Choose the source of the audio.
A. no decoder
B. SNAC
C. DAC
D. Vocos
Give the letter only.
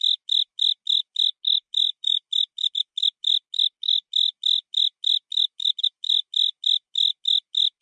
A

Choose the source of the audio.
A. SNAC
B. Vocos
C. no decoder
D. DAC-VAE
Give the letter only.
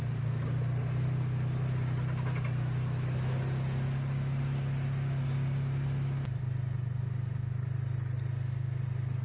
C